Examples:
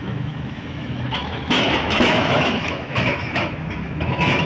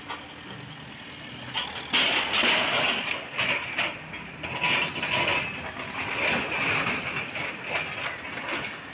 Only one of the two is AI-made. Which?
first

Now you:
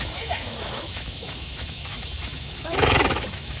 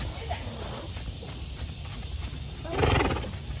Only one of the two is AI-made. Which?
first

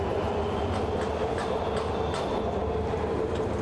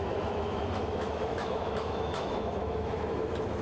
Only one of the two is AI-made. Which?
second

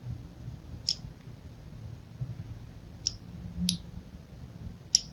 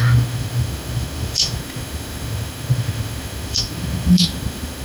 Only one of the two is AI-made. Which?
second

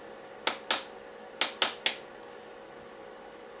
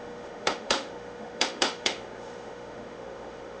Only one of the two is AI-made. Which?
second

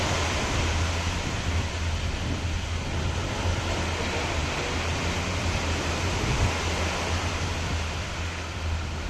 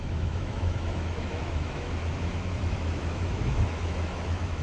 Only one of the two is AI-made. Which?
second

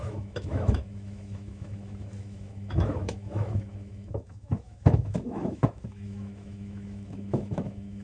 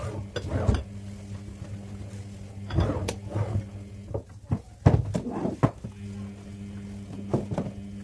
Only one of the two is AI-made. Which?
first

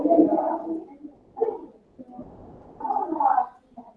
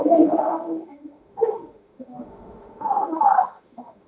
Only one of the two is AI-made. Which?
second